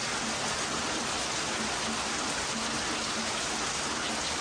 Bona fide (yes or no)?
yes